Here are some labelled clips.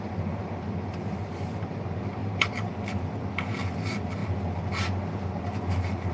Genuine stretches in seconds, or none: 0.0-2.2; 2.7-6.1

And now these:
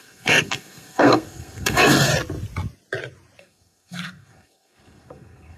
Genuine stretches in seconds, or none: 2.1-3.4

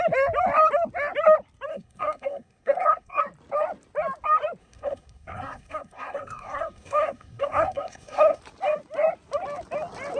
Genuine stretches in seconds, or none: 0.0-1.7; 3.2-4.6; 8.4-10.2

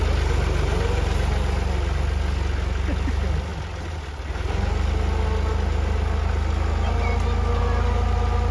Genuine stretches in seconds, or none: 0.0-8.5